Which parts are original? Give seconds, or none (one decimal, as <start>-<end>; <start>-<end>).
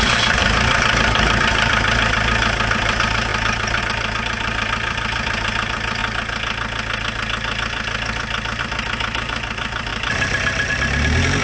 6.0-8.6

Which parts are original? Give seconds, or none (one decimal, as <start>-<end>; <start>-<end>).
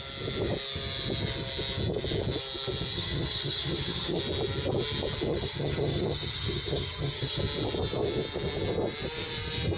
0.0-2.9; 4.2-5.3; 7.4-9.8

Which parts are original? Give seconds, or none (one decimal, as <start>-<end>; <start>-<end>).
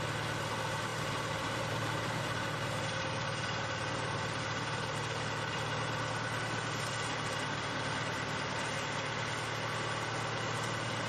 0.0-0.9; 5.6-11.1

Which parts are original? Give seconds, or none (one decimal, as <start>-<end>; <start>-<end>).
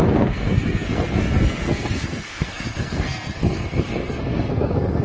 none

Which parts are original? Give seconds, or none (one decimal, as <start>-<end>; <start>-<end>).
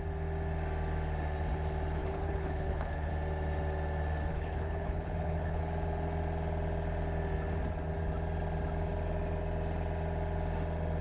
0.0-2.0; 3.1-4.3; 5.6-11.0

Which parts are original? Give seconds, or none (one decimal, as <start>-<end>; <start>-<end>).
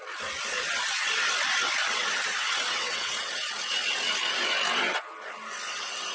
0.0-2.7; 3.3-6.1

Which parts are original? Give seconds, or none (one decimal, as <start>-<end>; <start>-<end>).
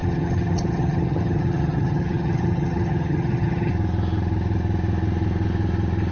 3.7-6.1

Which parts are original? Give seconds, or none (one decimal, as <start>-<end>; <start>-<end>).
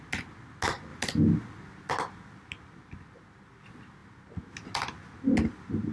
0.0-5.9